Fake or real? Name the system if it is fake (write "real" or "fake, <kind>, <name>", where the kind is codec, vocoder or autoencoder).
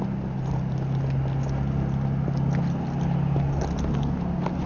real